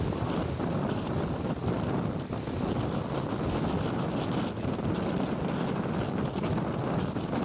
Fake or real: real